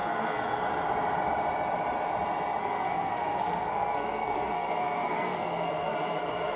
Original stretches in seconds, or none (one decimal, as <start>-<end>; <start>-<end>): 0.6-2.6